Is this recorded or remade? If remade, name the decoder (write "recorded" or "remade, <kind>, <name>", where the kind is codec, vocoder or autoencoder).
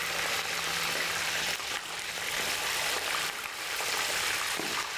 recorded